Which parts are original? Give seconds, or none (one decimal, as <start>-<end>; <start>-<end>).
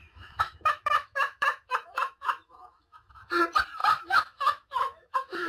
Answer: 3.3-3.8